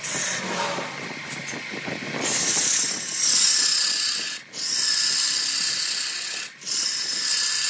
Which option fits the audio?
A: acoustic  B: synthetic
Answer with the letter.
A